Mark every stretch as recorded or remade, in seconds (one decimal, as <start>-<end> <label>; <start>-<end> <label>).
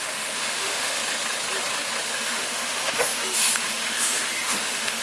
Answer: 0.0-1.0 remade; 1.0-2.0 recorded; 2.0-5.0 remade